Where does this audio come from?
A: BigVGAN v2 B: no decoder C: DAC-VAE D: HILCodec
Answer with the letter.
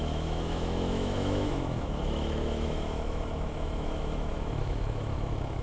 C